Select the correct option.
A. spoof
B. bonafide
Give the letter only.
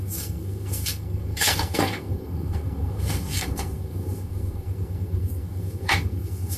A